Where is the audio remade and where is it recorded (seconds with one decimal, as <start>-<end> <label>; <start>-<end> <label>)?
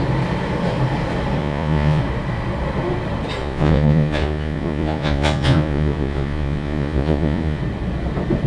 0.0-1.4 recorded; 1.4-2.0 remade; 2.0-3.4 recorded; 3.4-7.6 remade; 7.6-8.5 recorded